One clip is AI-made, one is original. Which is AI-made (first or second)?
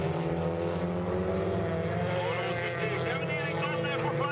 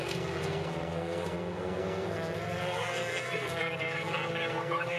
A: second